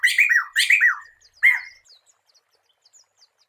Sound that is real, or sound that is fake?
real